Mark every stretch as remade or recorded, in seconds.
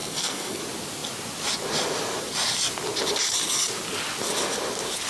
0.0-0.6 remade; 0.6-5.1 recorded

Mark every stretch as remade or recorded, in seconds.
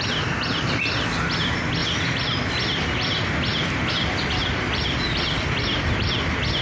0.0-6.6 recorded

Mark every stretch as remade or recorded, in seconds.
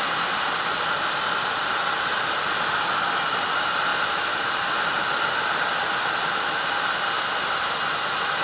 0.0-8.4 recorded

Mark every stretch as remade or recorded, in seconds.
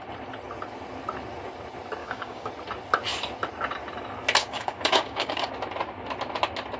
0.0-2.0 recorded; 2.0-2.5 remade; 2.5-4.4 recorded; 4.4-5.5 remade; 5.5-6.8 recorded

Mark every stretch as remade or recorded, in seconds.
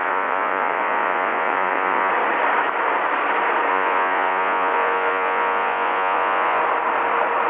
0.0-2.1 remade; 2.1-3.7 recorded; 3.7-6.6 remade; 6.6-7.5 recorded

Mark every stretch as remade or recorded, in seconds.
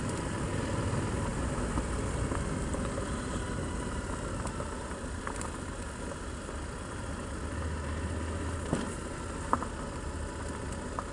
0.0-11.1 recorded